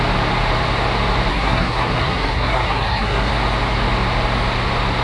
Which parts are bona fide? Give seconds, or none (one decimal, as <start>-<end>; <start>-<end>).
0.0-1.3; 3.3-5.0